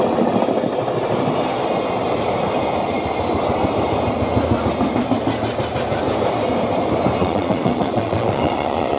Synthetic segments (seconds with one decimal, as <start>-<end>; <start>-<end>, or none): 7.2-9.0